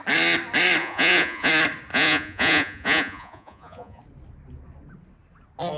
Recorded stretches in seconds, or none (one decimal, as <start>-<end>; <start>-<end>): 0.0-0.8; 1.5-1.9; 4.0-5.8